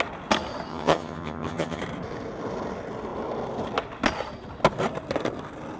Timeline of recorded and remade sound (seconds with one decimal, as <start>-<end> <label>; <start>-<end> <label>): 0.0-0.7 recorded; 0.7-1.8 remade; 1.8-5.8 recorded